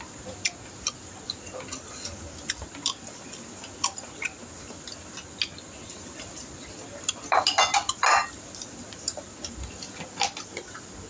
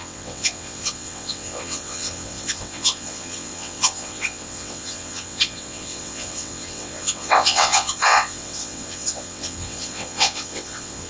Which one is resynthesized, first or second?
second